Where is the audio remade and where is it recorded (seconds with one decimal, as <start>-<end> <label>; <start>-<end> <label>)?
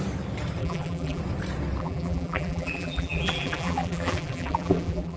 0.0-0.6 recorded; 0.6-1.2 remade; 1.2-1.8 recorded; 1.8-5.2 remade